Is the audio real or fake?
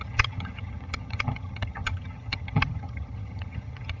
fake